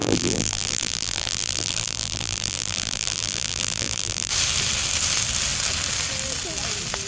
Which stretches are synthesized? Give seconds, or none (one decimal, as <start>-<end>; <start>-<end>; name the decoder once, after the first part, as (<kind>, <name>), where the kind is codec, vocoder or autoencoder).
0.0-4.3 (vocoder, BigVGAN v2)